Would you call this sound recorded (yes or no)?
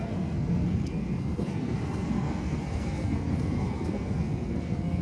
no